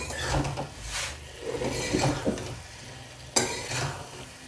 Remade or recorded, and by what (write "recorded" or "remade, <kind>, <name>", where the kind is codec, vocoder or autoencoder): recorded